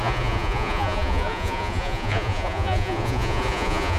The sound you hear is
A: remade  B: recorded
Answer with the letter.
A